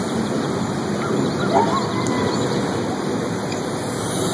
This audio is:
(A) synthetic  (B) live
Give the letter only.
B